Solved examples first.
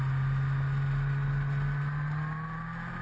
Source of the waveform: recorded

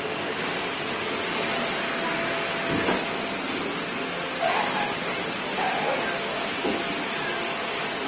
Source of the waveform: recorded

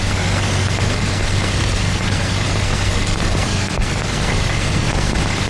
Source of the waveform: remade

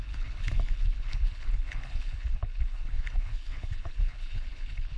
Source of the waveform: remade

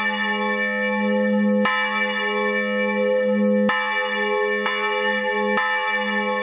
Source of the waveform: recorded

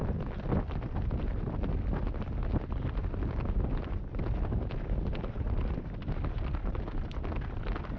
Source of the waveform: recorded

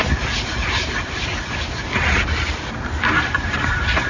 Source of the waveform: recorded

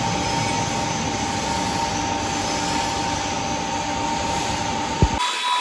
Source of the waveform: recorded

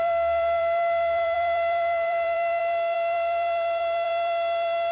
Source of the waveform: remade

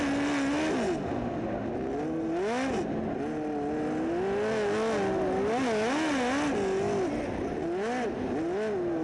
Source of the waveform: recorded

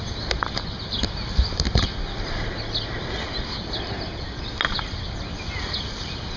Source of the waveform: recorded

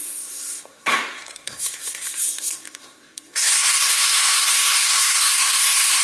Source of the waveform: remade